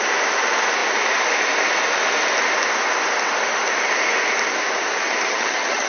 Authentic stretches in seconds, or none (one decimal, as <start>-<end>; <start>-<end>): 0.0-5.0